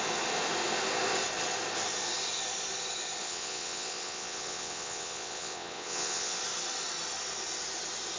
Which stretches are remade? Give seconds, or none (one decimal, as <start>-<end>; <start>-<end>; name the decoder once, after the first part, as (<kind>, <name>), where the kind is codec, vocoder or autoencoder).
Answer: 3.2-6.4 (vocoder, WaveNeXt)